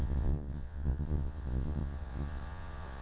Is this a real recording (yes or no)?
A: no